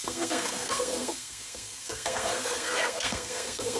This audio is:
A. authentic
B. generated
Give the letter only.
B